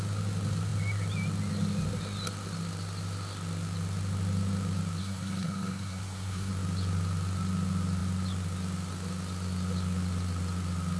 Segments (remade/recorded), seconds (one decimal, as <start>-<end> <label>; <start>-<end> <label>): 0.0-5.0 recorded; 5.0-6.5 remade; 6.5-11.0 recorded